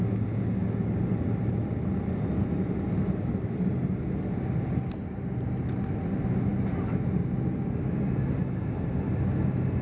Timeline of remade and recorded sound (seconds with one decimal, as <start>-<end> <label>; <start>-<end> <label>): 0.0-9.8 recorded